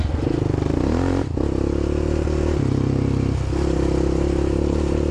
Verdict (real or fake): real